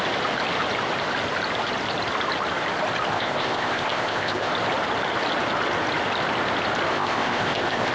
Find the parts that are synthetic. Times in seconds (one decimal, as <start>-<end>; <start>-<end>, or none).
3.1-4.5; 6.9-7.9